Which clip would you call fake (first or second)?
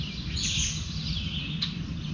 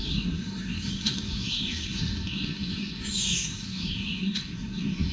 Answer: second